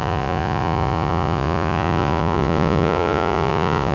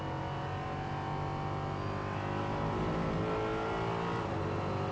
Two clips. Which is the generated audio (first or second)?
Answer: first